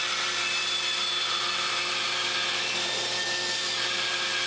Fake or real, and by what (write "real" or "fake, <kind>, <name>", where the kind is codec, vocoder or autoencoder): real